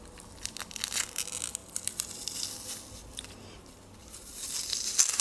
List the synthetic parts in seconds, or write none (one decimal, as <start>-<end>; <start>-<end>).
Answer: 4.0-5.2